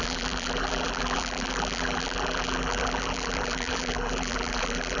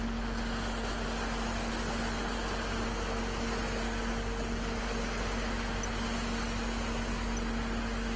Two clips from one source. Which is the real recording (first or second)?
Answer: second